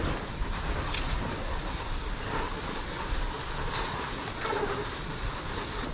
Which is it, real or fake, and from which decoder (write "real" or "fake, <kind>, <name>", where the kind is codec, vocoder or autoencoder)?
real